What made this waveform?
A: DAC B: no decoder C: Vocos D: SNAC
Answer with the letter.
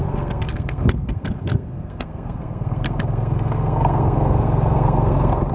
D